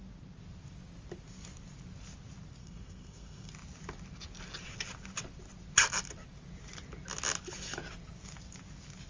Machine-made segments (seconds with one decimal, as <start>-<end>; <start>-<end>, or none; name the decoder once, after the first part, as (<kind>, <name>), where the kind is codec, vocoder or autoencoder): 2.6-3.5 (codec, SNAC)